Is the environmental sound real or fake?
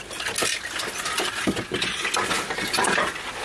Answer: real